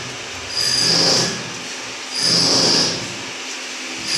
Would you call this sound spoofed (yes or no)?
no